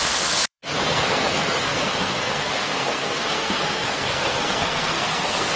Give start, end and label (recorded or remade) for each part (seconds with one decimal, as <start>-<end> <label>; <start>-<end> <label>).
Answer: 0.0-5.6 remade